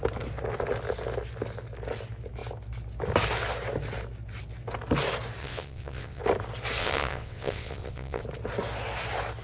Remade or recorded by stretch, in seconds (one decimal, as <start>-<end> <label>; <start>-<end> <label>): 0.0-5.4 recorded; 5.4-6.2 remade; 6.2-6.8 recorded; 6.8-8.2 remade; 8.2-9.4 recorded